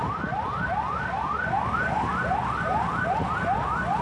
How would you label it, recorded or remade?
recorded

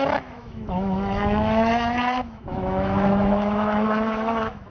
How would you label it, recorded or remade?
remade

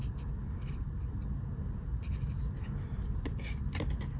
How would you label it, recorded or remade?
recorded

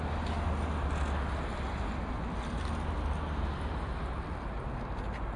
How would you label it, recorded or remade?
recorded